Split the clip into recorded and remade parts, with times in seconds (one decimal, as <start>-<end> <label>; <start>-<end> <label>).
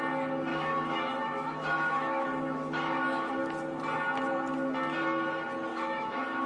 0.0-0.5 recorded; 0.5-3.3 remade; 3.3-5.7 recorded; 5.7-6.5 remade